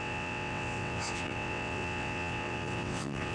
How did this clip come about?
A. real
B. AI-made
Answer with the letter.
B